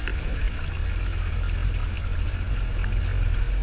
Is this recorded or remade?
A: recorded